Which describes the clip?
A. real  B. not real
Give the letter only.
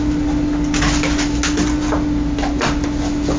A